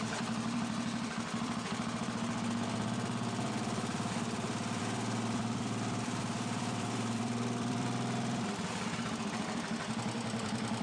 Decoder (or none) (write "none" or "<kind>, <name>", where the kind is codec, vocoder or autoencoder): vocoder, BigVGAN v2